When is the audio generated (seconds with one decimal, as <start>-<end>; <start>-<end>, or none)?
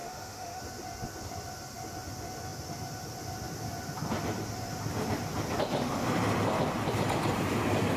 0.0-0.6